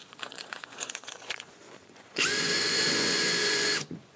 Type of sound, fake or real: fake